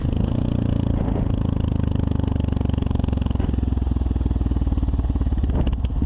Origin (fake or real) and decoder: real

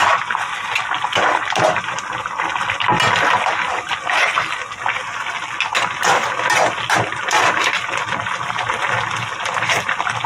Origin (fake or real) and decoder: real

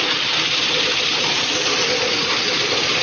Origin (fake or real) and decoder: real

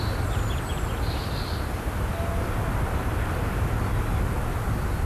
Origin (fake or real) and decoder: real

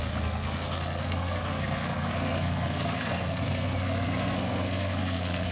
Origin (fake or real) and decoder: fake, codec, SNAC